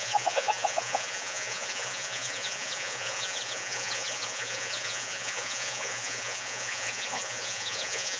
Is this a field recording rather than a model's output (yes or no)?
no